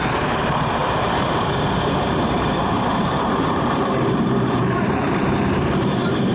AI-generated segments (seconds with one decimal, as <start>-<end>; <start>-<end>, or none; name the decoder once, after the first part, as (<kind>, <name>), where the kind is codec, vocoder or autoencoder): 0.0-6.3 (vocoder, BigVGAN v2)

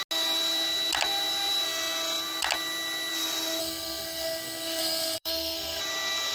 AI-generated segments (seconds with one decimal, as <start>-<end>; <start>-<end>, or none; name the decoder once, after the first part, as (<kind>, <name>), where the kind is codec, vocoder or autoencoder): 3.6-5.8 (codec, SNAC)

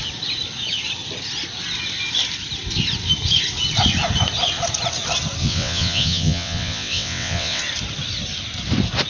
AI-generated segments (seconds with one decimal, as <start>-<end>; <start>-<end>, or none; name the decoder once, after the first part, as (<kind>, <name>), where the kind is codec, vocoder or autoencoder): 5.4-7.6 (vocoder, WaveNeXt)

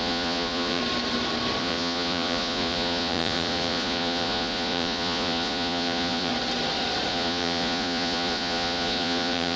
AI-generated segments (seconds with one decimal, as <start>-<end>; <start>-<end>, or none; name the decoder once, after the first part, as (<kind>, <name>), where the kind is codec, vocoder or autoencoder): 0.0-0.8 (vocoder, Vocos); 1.6-6.3; 7.1-9.6